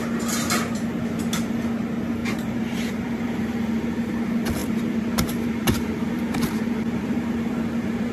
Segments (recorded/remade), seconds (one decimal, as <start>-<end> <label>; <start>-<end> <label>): 0.0-2.2 recorded; 2.2-4.1 remade; 4.1-4.6 recorded; 4.6-8.1 remade